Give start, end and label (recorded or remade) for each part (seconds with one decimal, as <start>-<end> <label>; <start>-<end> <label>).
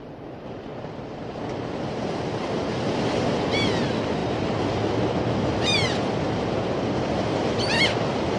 0.0-8.4 recorded